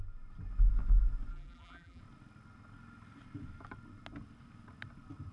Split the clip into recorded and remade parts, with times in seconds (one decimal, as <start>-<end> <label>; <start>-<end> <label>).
0.0-1.3 recorded; 1.3-2.0 remade; 2.0-5.3 recorded